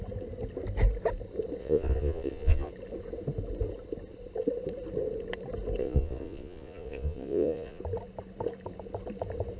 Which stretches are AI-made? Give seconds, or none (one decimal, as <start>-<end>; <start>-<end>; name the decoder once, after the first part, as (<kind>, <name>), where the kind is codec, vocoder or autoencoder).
1.6-2.7 (vocoder, Vocos); 5.8-7.8